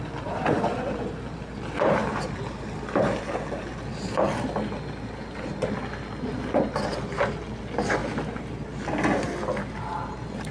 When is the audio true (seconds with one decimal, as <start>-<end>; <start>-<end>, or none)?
0.0-10.5